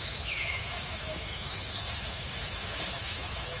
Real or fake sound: fake